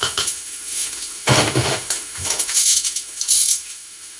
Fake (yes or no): yes